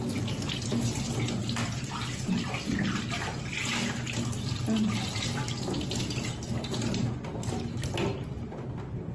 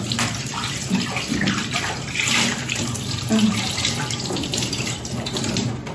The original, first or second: first